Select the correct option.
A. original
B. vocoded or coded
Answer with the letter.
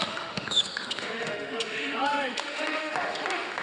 B